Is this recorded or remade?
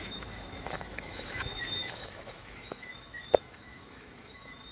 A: remade